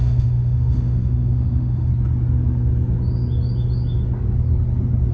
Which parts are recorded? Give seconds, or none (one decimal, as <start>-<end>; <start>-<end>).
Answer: 1.9-5.1